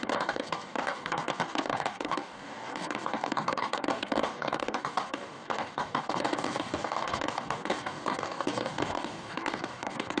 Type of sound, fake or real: fake